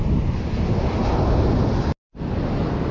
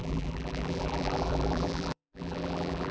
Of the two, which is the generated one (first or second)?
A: second